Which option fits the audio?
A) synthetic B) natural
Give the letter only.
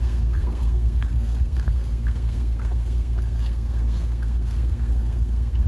A